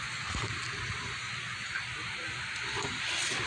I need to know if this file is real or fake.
real